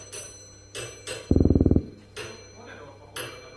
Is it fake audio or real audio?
real